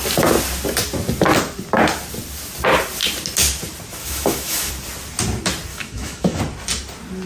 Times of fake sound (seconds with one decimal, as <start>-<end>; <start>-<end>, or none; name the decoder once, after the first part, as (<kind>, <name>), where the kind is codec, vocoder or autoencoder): 4.0-4.7 (autoencoder, DAC-VAE); 5.7-6.4